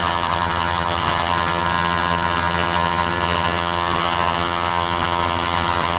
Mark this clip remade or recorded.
remade